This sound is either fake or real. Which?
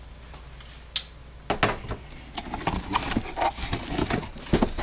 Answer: real